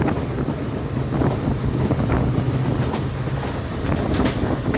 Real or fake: real